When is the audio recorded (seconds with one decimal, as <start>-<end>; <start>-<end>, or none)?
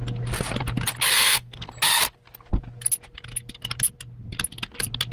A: 0.0-1.1; 1.7-5.1